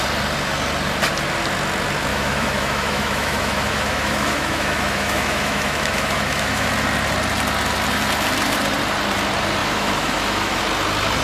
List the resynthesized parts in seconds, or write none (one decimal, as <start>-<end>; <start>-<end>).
2.1-6.7; 9.6-10.6